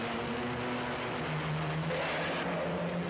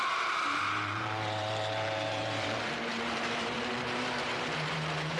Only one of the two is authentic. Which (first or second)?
first